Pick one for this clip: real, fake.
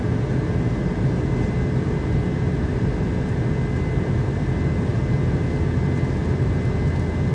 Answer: real